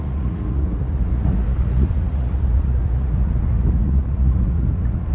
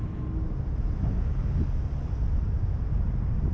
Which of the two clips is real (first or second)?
second